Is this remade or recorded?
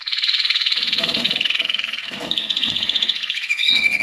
remade